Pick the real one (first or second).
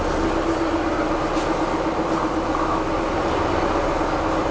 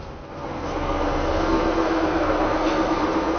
first